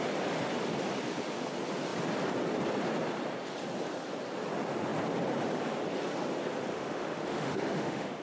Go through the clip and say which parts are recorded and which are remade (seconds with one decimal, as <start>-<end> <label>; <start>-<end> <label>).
0.0-6.7 recorded; 6.7-8.2 remade